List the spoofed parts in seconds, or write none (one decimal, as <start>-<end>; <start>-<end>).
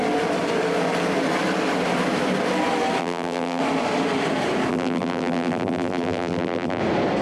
3.0-3.6; 4.7-6.8